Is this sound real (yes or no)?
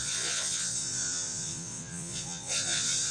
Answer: no